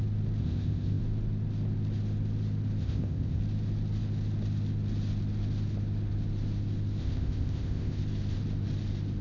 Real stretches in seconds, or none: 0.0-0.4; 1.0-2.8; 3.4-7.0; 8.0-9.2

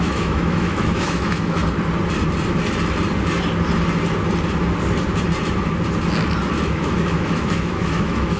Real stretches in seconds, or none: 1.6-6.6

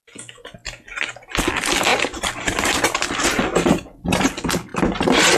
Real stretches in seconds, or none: 0.0-1.9; 3.4-5.4

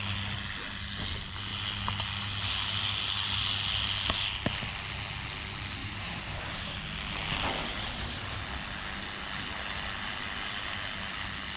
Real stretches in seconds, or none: 0.0-5.8; 6.8-7.6; 8.4-11.6